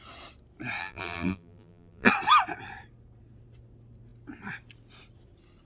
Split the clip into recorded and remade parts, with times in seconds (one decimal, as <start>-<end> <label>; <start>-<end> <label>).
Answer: 0.0-0.8 recorded; 0.8-2.1 remade; 2.1-5.7 recorded